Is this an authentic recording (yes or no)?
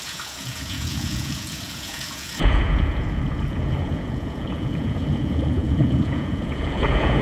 no